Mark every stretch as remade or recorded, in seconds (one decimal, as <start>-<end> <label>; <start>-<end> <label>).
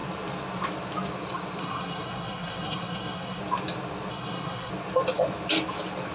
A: 0.0-1.6 recorded; 1.6-3.4 remade; 3.4-4.1 recorded; 4.1-4.7 remade; 4.7-6.1 recorded